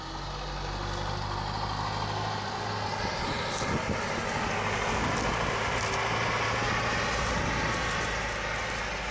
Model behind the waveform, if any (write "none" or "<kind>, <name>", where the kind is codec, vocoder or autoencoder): none